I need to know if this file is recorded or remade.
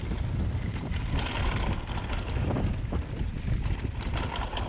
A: recorded